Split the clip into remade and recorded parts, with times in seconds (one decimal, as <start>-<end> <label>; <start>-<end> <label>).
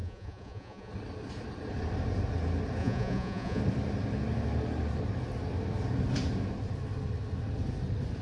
0.0-0.9 remade; 0.9-2.8 recorded; 2.8-3.6 remade; 3.6-8.2 recorded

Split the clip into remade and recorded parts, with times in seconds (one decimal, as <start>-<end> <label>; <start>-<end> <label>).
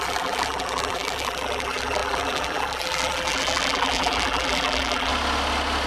0.0-5.1 remade; 5.1-5.9 recorded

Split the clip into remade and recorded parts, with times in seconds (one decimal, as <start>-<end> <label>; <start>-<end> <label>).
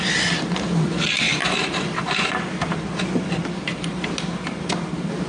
0.0-1.4 recorded; 1.4-4.1 remade; 4.1-5.3 recorded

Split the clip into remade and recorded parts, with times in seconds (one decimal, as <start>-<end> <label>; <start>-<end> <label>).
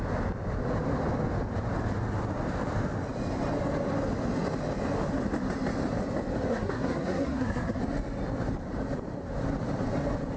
0.0-6.5 recorded; 6.5-7.8 remade; 7.8-10.4 recorded